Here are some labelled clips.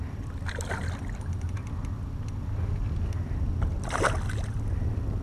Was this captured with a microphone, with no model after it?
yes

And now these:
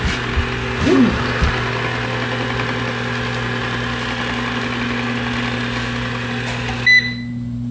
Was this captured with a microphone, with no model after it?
yes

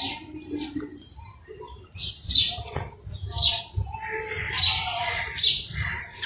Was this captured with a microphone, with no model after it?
no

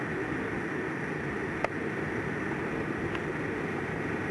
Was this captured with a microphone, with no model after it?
yes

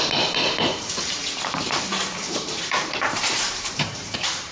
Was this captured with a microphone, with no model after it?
no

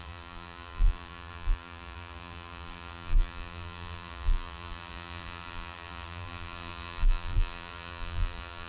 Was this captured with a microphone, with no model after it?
no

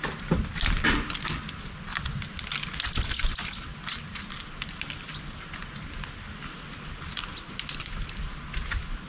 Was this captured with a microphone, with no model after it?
yes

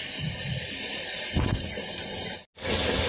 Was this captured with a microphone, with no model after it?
yes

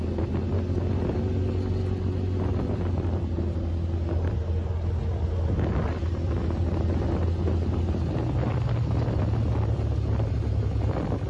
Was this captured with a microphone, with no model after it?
yes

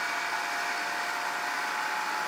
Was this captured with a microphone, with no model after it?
yes